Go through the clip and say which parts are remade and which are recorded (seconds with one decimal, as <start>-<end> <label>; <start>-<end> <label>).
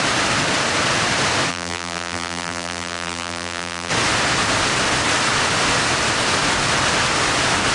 0.0-1.5 recorded; 1.5-3.9 remade; 3.9-7.7 recorded